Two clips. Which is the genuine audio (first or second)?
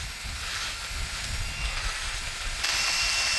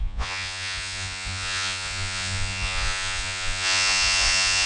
first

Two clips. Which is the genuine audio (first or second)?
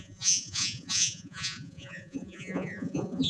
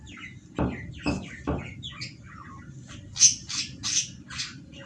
second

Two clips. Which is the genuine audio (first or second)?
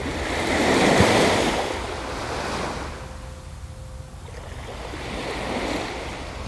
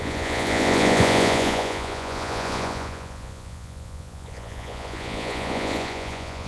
first